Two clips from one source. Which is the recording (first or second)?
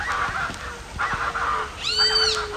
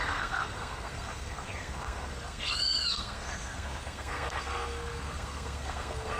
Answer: first